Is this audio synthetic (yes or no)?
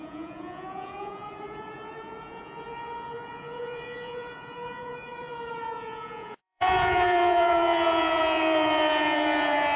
yes